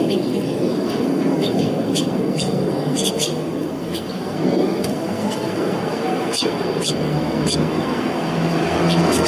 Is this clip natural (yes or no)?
no